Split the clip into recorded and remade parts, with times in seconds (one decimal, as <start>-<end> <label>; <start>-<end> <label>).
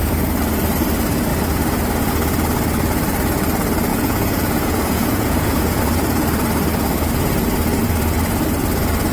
0.0-3.9 recorded; 3.9-5.8 remade; 5.8-9.1 recorded